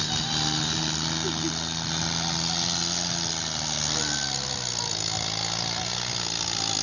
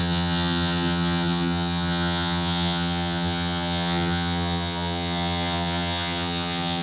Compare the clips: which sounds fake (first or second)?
second